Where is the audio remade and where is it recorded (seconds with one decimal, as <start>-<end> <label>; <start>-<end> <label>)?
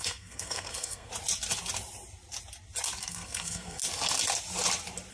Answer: 0.0-1.1 remade; 1.1-3.0 recorded; 3.0-3.8 remade; 3.8-5.1 recorded